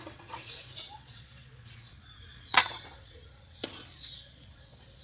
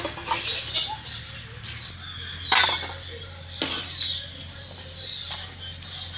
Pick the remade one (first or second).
first